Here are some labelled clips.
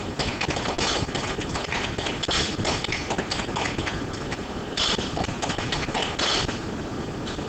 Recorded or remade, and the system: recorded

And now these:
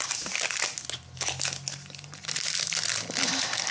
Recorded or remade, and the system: recorded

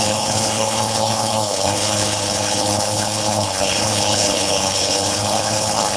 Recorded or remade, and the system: remade, codec, HILCodec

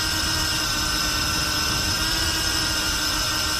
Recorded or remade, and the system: recorded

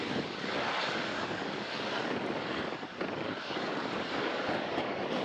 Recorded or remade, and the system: remade, codec, DAC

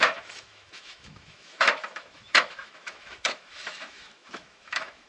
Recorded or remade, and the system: remade, autoencoder, DAC-VAE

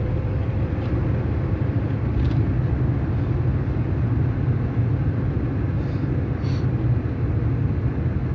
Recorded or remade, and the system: recorded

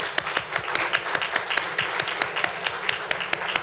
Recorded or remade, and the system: recorded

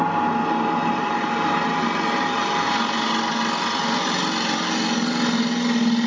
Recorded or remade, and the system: recorded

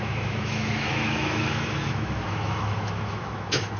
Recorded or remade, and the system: remade, autoencoder, DAC-VAE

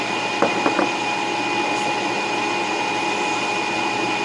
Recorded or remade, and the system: recorded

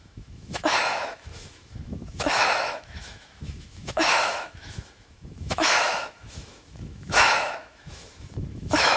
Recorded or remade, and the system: remade, autoencoder, DAC-VAE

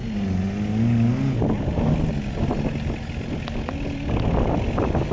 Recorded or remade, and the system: recorded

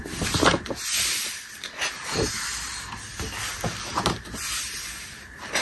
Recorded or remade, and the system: recorded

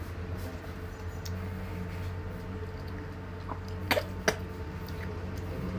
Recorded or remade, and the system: recorded